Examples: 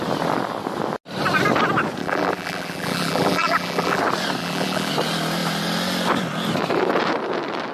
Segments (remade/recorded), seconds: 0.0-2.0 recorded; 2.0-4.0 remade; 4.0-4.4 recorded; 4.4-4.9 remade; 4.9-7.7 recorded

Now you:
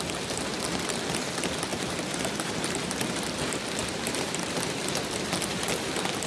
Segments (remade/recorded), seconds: 0.0-1.7 recorded; 1.7-3.2 remade; 3.2-3.8 recorded; 3.8-4.8 remade; 4.8-6.3 recorded

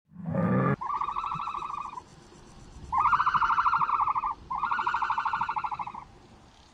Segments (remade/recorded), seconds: 0.0-2.1 recorded; 2.1-3.2 remade; 3.2-3.9 recorded; 3.9-4.5 remade; 4.5-6.7 recorded